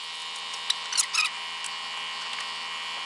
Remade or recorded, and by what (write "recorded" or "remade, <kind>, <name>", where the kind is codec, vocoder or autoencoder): recorded